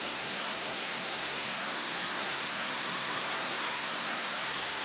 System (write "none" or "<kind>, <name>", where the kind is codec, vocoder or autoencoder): codec, SNAC